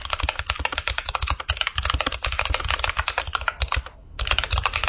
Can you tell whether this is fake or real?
real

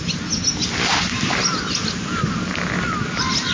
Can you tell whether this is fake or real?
real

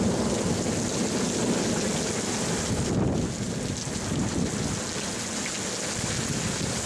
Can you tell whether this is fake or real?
real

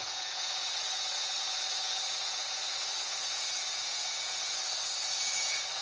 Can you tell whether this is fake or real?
fake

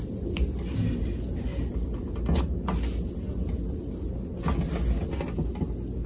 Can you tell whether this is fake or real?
real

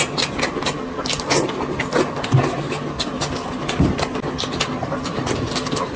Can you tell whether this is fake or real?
real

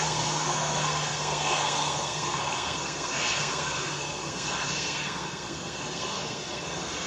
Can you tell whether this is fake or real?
fake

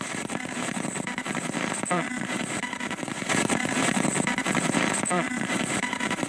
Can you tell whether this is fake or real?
fake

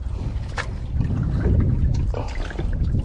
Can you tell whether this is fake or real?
real